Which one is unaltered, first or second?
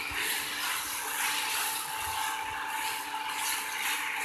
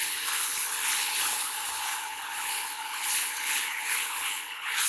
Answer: first